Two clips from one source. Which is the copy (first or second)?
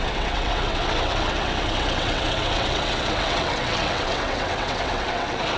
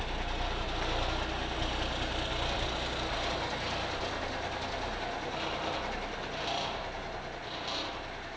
first